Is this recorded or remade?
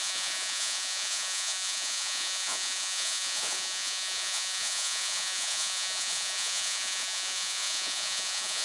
remade